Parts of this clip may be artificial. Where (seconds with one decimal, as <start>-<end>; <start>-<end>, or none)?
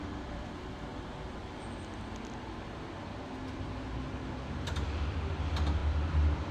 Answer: 0.0-0.9; 4.7-6.5